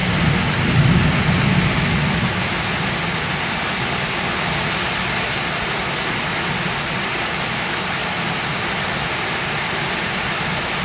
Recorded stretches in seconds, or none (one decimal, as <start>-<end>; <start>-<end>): 0.0-10.8